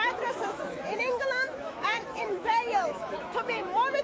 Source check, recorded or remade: remade